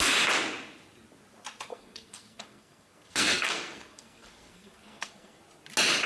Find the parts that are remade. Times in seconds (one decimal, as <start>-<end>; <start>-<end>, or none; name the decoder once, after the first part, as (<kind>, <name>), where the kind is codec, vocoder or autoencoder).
1.7-5.4 (codec, SNAC)